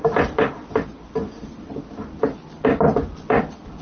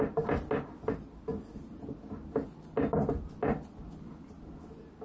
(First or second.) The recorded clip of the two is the second